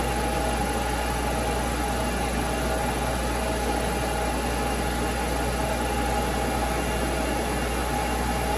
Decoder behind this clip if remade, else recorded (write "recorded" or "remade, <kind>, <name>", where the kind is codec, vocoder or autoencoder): recorded